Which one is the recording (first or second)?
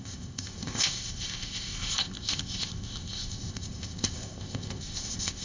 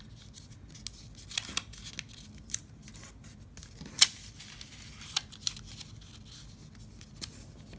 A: second